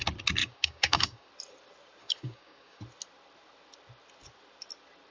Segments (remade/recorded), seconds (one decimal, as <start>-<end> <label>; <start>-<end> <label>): 0.0-0.4 recorded; 0.4-1.3 remade; 1.3-2.0 recorded; 2.0-2.8 remade; 2.8-5.1 recorded